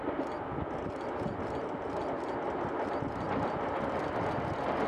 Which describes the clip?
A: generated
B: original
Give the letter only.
B